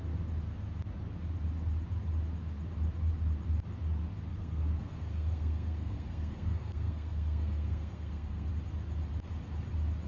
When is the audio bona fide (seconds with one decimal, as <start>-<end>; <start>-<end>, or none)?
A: 0.0-4.3; 8.5-10.1